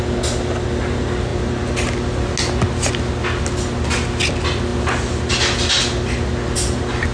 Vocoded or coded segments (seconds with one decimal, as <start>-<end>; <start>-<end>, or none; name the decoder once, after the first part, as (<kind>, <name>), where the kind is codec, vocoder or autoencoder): none